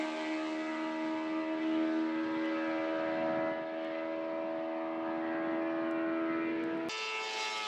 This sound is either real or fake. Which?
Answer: real